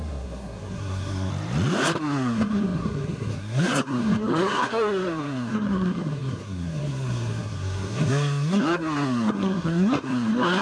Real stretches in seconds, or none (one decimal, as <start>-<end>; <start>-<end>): 1.3-2.0